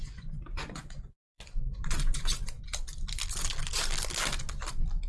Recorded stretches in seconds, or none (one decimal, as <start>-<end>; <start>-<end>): 2.6-5.1